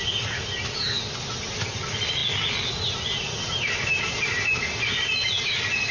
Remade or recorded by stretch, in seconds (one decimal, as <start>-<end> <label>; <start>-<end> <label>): 0.0-5.9 recorded